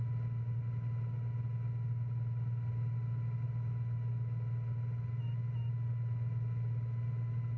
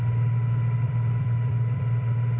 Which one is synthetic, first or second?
second